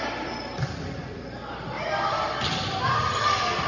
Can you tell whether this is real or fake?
real